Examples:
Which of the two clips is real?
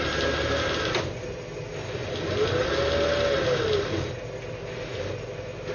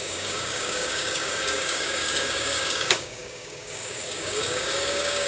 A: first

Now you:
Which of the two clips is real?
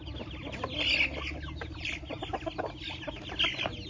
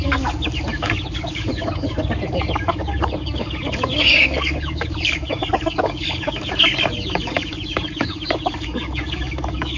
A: first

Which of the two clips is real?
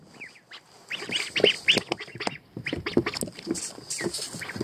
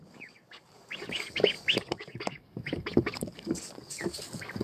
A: first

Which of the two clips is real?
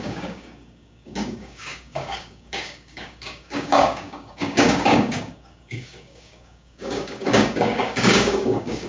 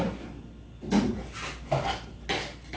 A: second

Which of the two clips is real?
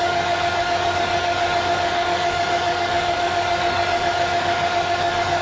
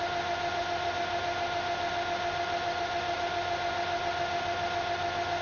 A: second